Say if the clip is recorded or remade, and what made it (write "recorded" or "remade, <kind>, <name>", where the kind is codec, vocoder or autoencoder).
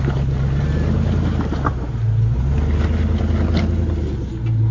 recorded